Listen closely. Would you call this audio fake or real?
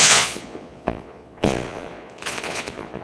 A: fake